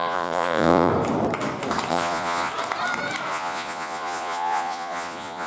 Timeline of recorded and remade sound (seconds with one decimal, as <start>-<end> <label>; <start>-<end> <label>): 0.0-0.9 remade; 0.9-1.9 recorded; 1.9-2.5 remade; 2.5-3.3 recorded; 3.3-5.5 remade